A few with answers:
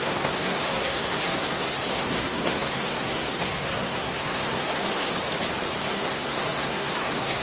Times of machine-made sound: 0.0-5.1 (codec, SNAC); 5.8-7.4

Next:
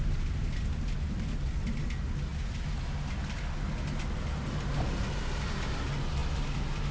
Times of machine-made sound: none